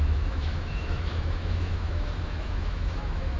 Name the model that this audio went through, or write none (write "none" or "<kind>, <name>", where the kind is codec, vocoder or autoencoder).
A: autoencoder, DAC-VAE